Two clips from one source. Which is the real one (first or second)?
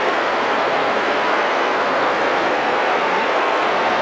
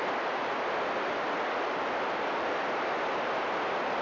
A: second